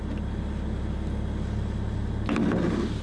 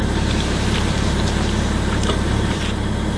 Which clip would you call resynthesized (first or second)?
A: second